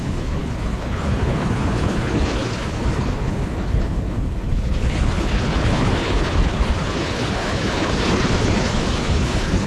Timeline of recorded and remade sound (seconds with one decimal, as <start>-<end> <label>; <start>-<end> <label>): 0.0-9.7 remade